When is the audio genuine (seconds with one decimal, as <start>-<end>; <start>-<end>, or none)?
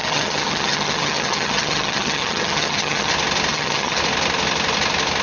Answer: 3.1-3.5; 4.0-5.2